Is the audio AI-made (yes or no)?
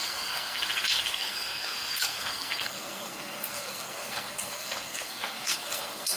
yes